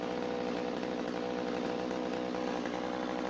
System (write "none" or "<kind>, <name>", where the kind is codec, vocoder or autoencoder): none